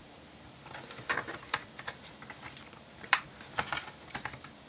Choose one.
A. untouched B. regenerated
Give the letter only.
B